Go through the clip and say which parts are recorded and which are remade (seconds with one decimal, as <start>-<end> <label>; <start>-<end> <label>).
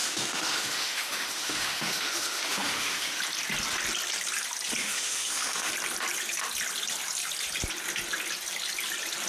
0.0-3.2 remade; 3.2-4.8 recorded; 4.8-5.7 remade; 5.7-9.3 recorded